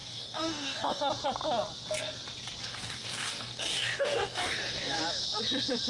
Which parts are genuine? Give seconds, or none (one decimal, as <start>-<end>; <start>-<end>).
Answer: 1.0-2.6; 5.0-5.9